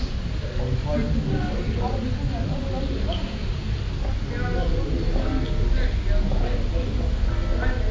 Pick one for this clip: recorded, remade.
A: recorded